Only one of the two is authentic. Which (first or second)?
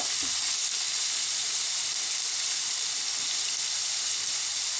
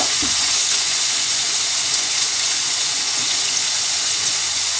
first